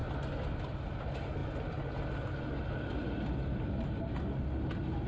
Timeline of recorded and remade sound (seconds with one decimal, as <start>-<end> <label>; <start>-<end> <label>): 0.0-5.1 recorded